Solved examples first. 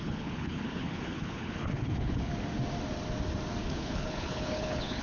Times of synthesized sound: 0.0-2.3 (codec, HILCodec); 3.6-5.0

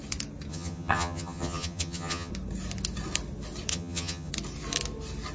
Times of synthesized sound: 0.5-2.3 (vocoder, HiFi-GAN); 3.7-4.3

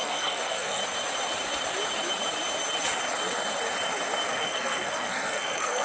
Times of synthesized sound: 0.0-0.8 (codec, SNAC); 4.3-5.8

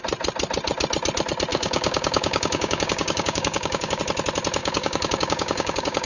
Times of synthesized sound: 1.5-4.0 (codec, DAC); 4.6-6.1

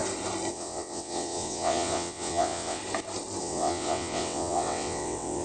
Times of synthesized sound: 0.5-2.8 (vocoder, WaveNeXt); 3.4-5.4

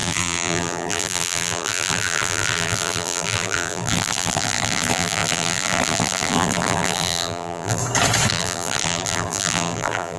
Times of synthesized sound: 0.0-7.8 (vocoder, BigVGAN v2); 8.3-10.2